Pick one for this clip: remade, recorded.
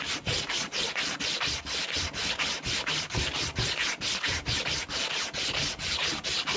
recorded